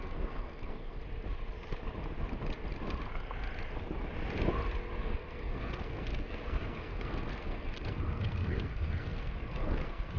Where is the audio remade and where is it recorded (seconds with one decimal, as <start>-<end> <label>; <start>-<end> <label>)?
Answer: 0.0-1.0 remade; 1.0-5.0 recorded; 5.0-10.2 remade